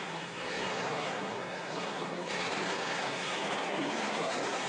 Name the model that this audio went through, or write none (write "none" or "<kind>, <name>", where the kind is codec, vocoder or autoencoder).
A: codec, SNAC